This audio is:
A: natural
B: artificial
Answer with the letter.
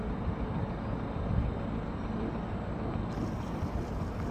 A